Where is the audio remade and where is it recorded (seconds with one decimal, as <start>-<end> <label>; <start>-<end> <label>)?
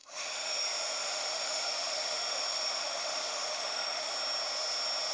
0.0-0.6 remade; 0.6-1.0 recorded; 1.0-4.1 remade; 4.1-5.1 recorded